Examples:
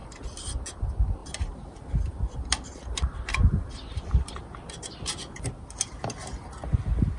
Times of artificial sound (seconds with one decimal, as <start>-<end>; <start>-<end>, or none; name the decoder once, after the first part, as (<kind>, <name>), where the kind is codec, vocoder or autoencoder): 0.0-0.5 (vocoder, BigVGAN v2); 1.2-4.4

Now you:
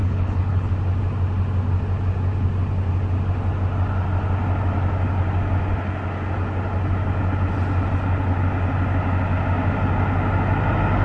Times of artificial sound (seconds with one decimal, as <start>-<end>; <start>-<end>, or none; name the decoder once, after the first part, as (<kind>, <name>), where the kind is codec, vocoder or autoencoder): 0.0-0.7 (codec, HILCodec)

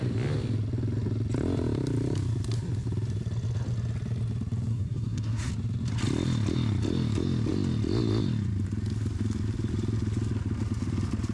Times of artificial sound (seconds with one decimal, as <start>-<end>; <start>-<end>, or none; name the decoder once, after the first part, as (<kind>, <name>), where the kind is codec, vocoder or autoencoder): 4.7-5.5 (codec, SNAC)

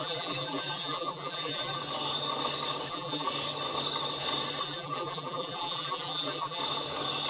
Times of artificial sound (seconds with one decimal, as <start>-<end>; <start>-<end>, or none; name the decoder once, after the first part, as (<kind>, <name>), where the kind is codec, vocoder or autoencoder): 0.0-1.8 (vocoder, BigVGAN v2); 2.9-3.3; 4.6-6.6

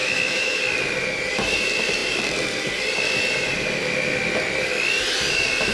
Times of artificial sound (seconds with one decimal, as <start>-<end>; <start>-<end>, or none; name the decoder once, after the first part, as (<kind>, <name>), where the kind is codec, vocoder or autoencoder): 0.0-0.6 (autoencoder, DAC-VAE)